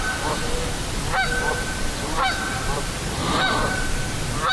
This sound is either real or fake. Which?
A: real